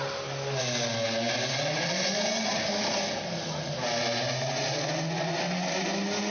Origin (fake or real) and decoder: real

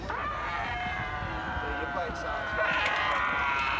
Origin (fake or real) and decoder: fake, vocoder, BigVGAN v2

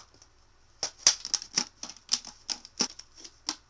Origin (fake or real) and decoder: real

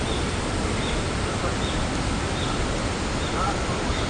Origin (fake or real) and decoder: real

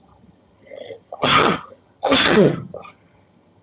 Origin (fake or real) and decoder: fake, vocoder, HiFi-GAN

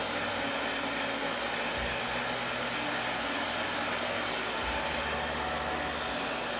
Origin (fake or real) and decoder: real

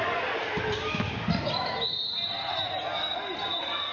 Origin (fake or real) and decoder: real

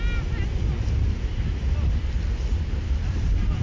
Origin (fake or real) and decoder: real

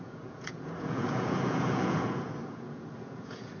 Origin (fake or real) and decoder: fake, vocoder, Vocos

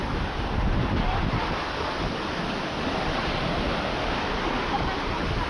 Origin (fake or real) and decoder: real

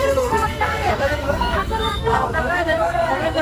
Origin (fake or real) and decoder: fake, codec, SNAC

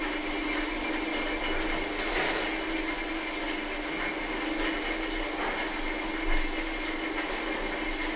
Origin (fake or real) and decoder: real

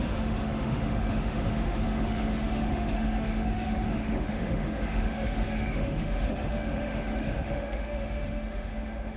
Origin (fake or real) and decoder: fake, autoencoder, DAC-VAE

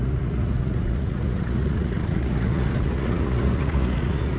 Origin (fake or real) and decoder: fake, vocoder, Vocos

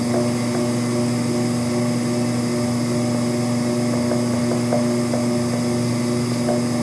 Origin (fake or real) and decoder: real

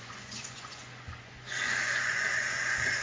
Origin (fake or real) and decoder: fake, vocoder, Vocos